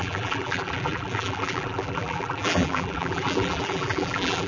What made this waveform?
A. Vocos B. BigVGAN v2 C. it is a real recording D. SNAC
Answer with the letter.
B